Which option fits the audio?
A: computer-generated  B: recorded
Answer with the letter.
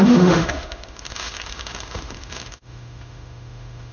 A